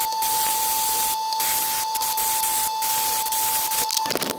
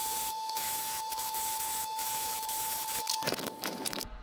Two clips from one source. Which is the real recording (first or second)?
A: first